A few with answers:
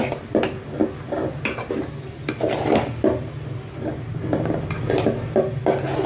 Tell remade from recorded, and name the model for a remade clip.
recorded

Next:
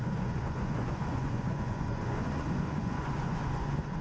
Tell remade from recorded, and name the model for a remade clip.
remade, vocoder, Vocos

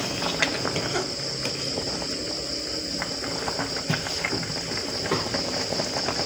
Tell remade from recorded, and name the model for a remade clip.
recorded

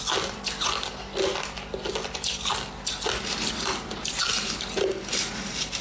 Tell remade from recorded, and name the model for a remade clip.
recorded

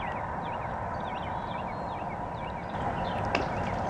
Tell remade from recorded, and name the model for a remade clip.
recorded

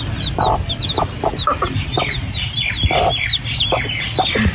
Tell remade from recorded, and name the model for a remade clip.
recorded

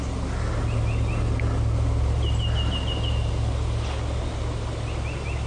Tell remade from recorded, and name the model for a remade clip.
recorded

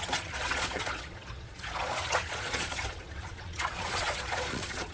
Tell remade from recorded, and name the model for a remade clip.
remade, vocoder, Vocos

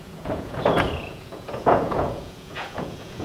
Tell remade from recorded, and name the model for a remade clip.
remade, vocoder, Vocos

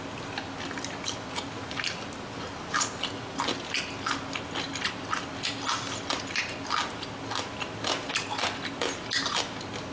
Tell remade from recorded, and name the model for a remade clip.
recorded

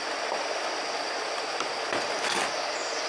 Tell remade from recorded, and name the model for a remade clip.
recorded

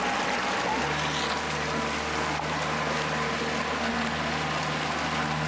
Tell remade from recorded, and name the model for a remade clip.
recorded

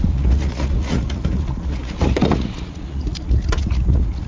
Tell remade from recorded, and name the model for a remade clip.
remade, vocoder, Vocos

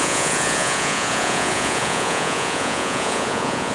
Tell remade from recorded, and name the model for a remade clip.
remade, vocoder, Vocos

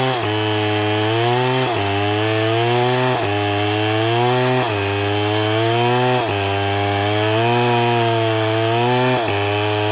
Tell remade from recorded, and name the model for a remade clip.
recorded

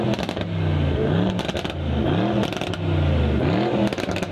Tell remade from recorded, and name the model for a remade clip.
recorded